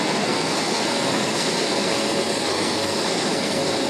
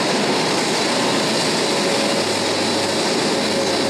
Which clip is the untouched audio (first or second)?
second